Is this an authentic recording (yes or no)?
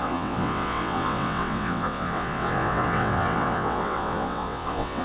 no